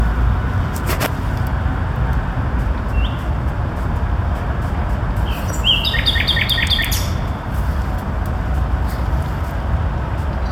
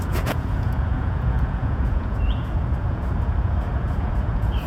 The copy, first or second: second